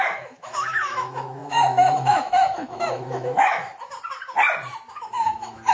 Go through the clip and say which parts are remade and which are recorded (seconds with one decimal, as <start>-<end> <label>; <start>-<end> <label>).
0.0-3.7 remade; 3.7-4.9 recorded; 4.9-5.7 remade